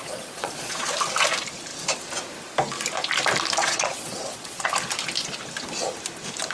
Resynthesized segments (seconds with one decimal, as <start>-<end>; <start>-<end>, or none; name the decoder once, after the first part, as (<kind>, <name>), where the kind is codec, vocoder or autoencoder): 0.0-0.9 (vocoder, Vocos); 3.6-4.7